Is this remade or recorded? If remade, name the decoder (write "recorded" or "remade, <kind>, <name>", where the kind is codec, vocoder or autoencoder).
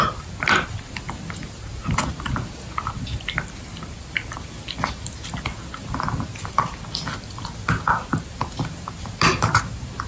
recorded